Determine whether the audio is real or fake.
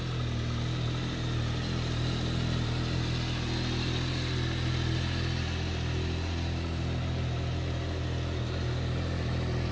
real